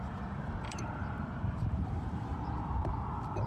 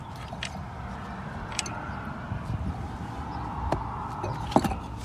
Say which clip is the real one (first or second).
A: second